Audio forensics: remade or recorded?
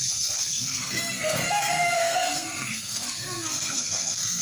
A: remade